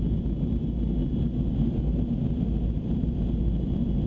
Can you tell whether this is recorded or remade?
recorded